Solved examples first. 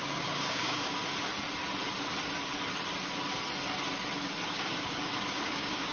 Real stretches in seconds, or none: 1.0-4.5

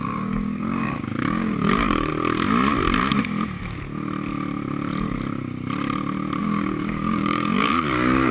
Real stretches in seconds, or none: 2.1-6.4

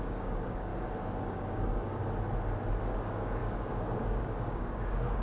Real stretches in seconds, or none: 0.7-1.3; 2.0-2.8

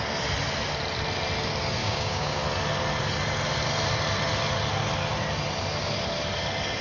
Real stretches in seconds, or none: 0.0-1.8; 2.4-6.8

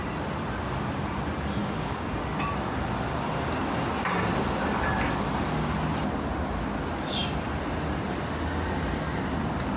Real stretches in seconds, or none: 0.0-1.6; 2.2-9.8

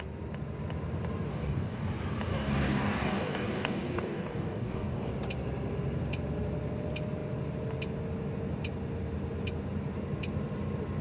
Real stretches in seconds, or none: 0.0-1.3; 1.9-2.3; 5.1-11.0

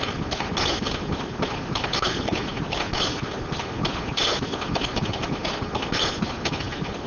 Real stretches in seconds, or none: 0.0-7.1

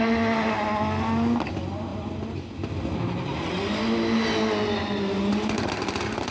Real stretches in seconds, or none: 0.0-6.3